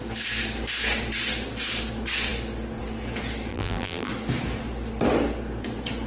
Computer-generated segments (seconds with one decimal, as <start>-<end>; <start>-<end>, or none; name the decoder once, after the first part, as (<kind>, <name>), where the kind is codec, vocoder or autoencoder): 3.5-4.1 (vocoder, BigVGAN v2)